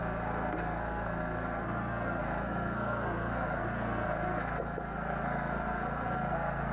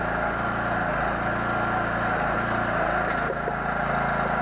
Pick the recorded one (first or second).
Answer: second